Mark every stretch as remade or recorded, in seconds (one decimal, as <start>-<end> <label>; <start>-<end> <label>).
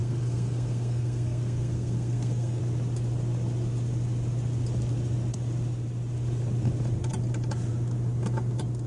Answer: 0.0-2.6 remade; 2.6-8.9 recorded